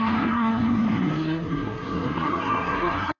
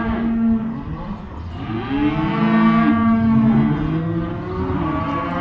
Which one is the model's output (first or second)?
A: first